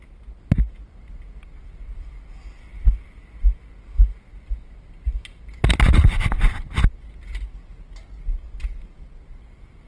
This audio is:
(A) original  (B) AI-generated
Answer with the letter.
A